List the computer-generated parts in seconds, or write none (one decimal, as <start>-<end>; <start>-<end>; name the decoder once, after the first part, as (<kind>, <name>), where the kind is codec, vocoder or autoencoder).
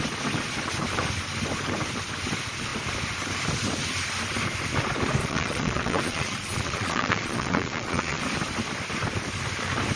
5.2-8.2 (vocoder, Vocos)